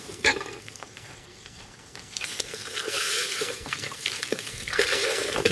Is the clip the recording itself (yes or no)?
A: no